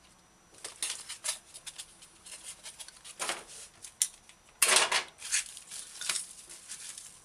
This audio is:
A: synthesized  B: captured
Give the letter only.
B